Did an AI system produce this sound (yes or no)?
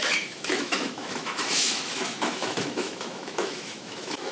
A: yes